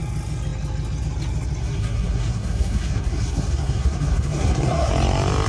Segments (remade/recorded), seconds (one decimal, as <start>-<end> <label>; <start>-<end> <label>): 0.0-1.6 recorded; 1.6-4.9 remade; 4.9-5.5 recorded